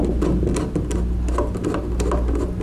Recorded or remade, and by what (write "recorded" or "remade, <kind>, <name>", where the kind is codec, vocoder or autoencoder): recorded